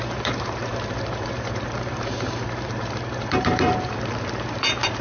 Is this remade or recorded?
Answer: remade